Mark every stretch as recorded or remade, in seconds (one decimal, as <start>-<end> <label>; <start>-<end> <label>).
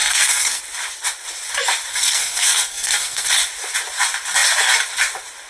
0.0-0.6 remade; 0.6-1.9 recorded; 1.9-3.3 remade; 3.3-5.5 recorded